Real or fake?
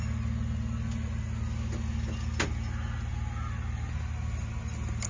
real